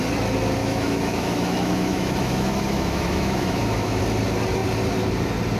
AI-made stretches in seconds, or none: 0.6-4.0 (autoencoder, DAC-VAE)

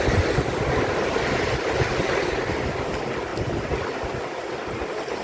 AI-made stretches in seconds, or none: none